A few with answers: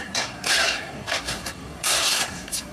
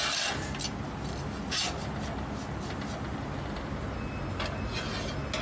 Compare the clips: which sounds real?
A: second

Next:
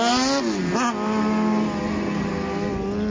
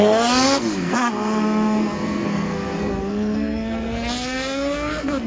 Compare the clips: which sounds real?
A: first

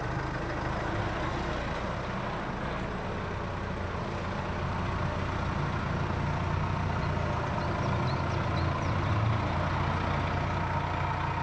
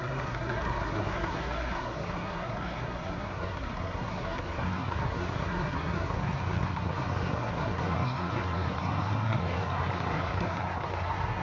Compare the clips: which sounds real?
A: first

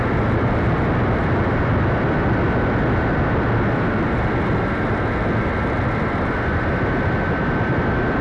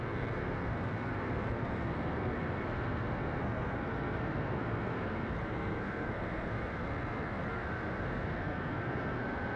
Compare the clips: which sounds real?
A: first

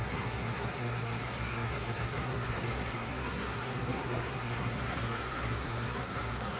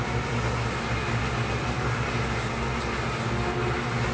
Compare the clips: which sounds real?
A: second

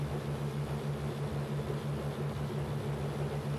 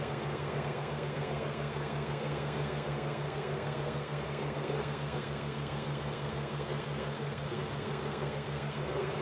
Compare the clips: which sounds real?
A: first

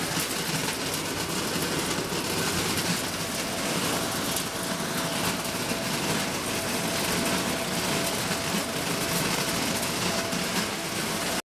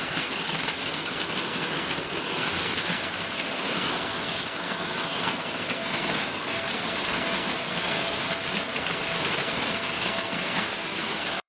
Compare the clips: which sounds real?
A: first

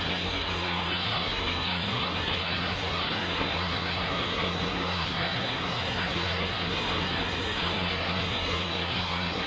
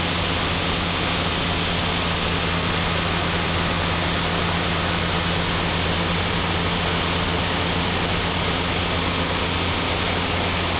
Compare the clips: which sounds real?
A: second